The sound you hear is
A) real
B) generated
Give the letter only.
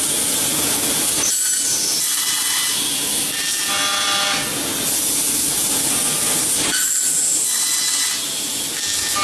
A